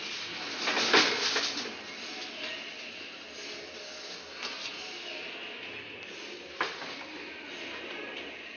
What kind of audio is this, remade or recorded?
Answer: recorded